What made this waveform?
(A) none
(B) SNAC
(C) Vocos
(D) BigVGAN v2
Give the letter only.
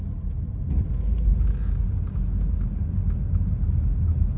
A